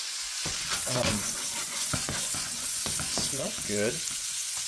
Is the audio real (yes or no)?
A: no